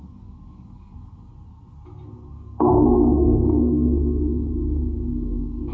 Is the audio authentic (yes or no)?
no